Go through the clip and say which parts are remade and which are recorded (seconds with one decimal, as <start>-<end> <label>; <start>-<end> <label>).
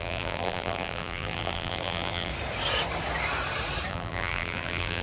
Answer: 0.0-2.3 remade; 2.3-3.9 recorded; 3.9-5.0 remade